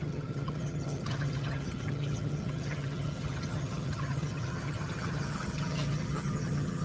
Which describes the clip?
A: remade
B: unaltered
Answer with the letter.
A